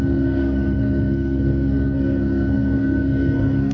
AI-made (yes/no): yes